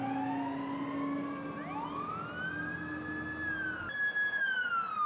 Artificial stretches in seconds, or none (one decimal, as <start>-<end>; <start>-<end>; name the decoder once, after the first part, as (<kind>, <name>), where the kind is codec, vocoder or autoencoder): none

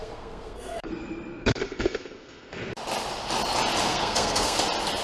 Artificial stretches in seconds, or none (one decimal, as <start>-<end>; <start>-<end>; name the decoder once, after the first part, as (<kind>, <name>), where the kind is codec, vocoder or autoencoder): 0.0-0.9 (codec, SNAC); 1.4-2.6; 3.9-4.6

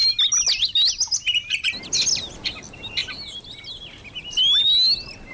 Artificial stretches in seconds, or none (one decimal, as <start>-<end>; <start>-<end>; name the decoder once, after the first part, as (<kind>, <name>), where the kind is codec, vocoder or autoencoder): none

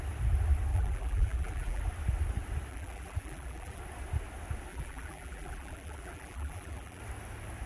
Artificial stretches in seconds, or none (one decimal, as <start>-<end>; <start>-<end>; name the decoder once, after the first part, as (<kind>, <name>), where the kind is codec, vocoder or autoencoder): 0.7-1.8 (vocoder, BigVGAN v2); 2.7-3.8; 4.7-7.0

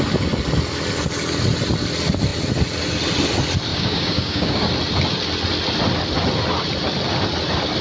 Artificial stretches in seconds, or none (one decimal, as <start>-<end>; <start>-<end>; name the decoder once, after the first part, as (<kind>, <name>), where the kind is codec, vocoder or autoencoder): 3.7-4.7 (codec, DAC)